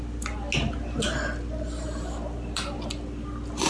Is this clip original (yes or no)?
yes